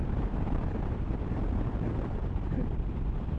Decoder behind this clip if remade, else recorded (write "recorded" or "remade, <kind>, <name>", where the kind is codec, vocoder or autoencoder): remade, vocoder, BigVGAN v2